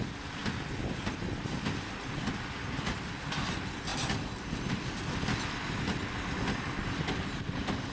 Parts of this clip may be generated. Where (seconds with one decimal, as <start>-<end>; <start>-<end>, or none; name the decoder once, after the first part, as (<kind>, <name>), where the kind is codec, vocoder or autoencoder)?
none